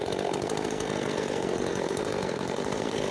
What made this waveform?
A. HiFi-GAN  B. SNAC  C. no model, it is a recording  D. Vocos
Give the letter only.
B